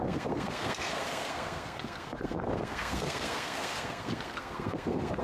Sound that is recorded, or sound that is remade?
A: remade